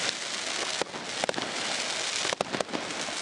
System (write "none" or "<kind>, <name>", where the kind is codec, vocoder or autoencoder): none